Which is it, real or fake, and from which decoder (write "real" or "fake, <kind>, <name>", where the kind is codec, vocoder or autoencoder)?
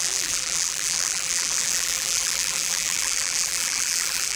fake, vocoder, BigVGAN v2